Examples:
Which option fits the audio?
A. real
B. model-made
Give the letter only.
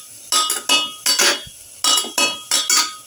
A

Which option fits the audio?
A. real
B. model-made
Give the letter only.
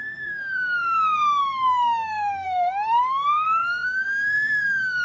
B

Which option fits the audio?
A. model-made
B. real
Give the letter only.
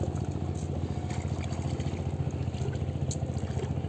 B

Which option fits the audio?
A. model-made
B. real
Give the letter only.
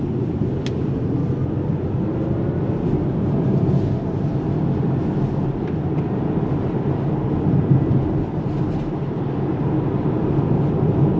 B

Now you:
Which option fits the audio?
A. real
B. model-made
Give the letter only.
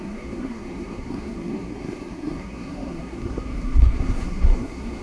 B